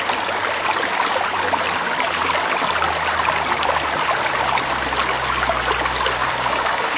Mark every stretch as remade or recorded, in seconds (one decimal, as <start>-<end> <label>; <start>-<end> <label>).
0.0-6.2 recorded; 6.2-7.0 remade